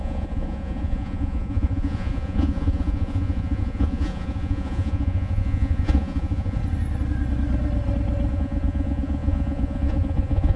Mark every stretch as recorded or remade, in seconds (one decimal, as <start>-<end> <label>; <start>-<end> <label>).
0.0-6.6 remade; 6.6-8.3 recorded; 8.3-10.6 remade